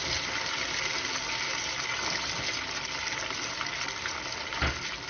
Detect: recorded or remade recorded